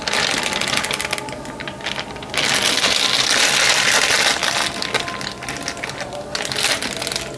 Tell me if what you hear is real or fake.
real